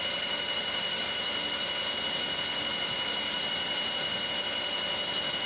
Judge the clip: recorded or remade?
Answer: recorded